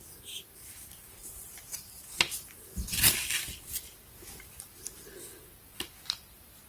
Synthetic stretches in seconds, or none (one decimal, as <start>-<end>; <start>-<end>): 1.2-2.0